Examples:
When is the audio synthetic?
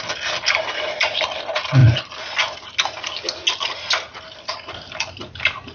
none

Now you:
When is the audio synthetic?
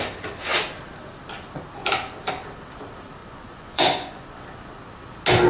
3.2-4.4 (vocoder, Vocos)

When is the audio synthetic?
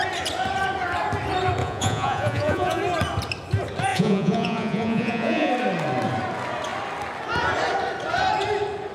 1.6-2.8 (vocoder, Vocos); 3.9-5.5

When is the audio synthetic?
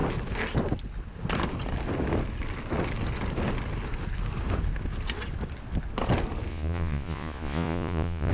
6.5-8.3 (vocoder, Vocos)